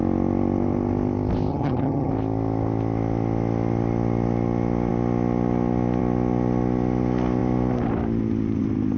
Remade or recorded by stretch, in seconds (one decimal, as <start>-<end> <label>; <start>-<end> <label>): 0.0-1.5 recorded; 1.5-2.1 remade; 2.1-9.0 recorded